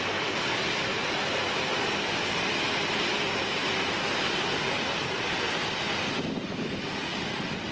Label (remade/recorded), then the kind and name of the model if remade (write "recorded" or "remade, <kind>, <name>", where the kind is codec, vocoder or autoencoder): recorded